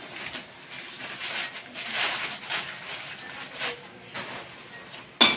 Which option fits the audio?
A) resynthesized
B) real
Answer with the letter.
B